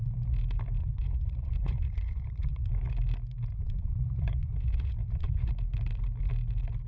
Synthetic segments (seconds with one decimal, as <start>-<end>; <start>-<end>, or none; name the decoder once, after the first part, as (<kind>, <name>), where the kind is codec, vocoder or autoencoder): 0.8-2.7 (vocoder, Vocos); 3.5-5.5